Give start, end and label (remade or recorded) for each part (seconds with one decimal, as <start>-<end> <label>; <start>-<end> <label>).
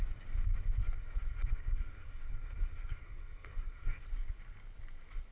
0.0-0.8 recorded; 0.8-4.0 remade; 4.0-5.3 recorded